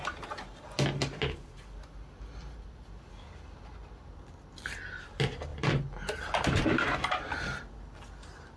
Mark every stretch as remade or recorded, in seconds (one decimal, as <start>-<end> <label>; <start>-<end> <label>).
0.0-8.6 recorded